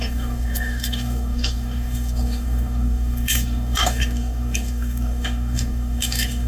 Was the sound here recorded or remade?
remade